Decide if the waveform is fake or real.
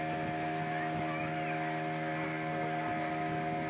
real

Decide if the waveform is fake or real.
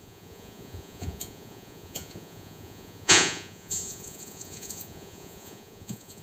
fake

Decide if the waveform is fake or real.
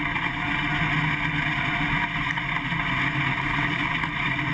real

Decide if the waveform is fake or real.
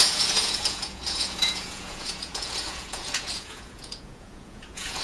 fake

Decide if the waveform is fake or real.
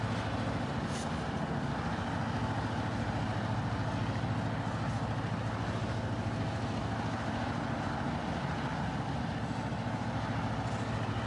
real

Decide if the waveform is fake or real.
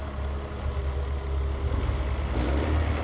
real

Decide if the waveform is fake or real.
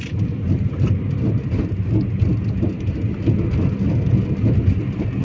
real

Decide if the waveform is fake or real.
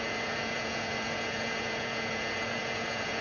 fake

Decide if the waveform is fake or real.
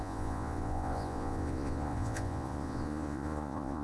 fake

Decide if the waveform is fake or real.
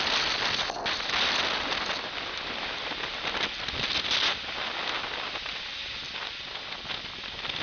real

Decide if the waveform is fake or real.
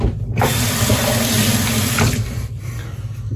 real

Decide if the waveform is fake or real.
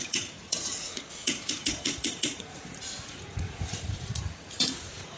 fake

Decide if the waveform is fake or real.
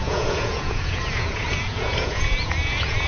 fake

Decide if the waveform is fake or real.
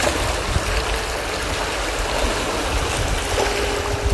real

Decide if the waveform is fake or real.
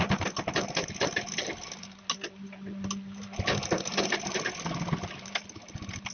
real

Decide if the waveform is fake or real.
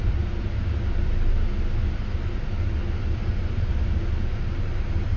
real